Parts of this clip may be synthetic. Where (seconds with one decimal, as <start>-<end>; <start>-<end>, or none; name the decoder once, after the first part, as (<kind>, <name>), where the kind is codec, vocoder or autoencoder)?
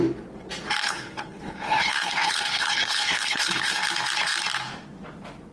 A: 0.8-3.8 (codec, HILCodec)